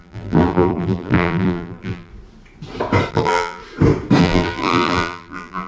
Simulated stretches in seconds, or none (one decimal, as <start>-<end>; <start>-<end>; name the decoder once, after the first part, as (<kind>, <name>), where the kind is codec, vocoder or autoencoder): 0.0-2.1 (vocoder, BigVGAN v2); 3.1-3.6; 4.2-5.7